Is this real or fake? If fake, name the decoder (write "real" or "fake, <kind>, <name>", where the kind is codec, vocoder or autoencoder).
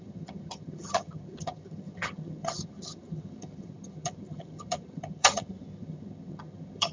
fake, vocoder, HiFi-GAN